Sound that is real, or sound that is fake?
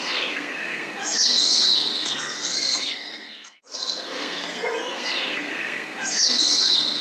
fake